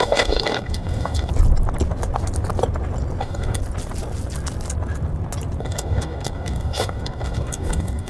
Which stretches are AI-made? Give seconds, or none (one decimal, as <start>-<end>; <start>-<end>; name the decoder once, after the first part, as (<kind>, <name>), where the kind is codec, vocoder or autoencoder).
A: 0.0-1.3 (codec, DAC); 3.2-3.6; 5.6-8.1